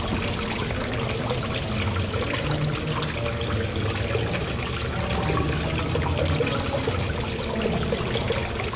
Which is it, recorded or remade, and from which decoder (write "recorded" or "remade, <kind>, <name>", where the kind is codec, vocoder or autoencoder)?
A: recorded